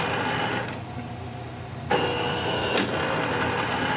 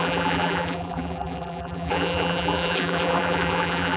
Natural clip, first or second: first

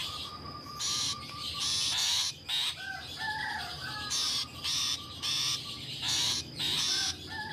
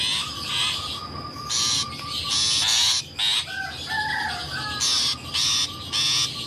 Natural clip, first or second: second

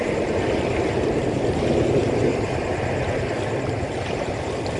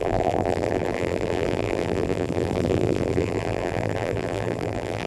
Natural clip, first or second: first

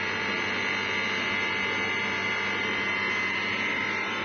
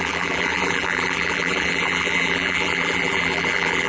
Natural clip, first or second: first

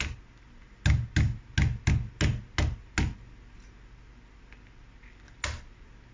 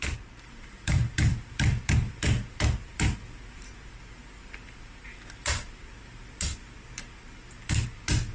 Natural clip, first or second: first